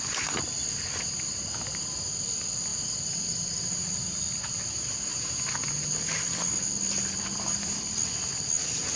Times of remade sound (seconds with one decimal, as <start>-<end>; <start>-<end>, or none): none

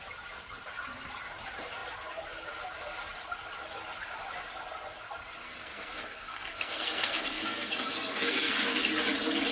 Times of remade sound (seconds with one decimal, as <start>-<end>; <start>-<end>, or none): 5.4-8.8

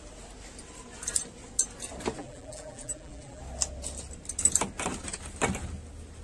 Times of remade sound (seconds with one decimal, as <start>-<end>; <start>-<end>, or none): 2.2-3.4

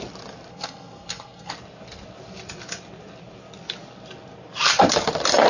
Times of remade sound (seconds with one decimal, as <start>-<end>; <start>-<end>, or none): 0.5-1.5

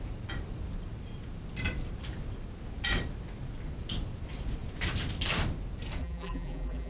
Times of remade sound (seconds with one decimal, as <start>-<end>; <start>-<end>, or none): 6.0-6.9

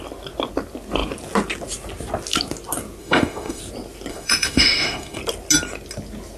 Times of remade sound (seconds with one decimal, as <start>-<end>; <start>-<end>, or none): 3.0-3.6; 4.1-5.2